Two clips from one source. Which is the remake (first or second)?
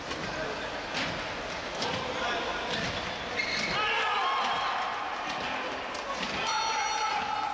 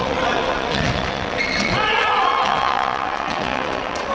second